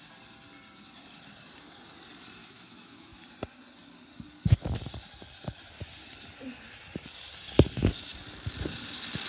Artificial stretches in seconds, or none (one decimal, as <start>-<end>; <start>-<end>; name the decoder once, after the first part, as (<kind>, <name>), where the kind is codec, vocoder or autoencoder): 2.4-3.3 (autoencoder, DAC-VAE)